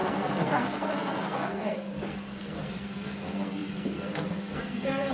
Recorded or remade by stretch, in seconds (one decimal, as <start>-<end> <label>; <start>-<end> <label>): 0.0-5.1 remade